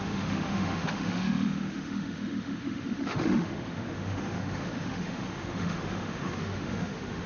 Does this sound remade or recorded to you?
remade